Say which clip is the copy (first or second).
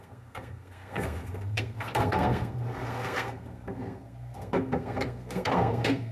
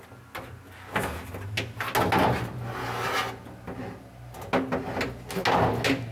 first